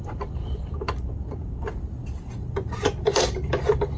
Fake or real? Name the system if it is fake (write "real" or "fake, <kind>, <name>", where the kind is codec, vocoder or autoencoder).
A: fake, vocoder, BigVGAN v2